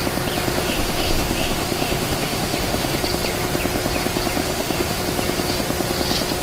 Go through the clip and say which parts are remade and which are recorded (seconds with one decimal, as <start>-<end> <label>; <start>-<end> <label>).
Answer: 0.0-0.6 recorded; 0.6-3.0 remade; 3.0-4.4 recorded; 4.4-5.0 remade; 5.0-6.4 recorded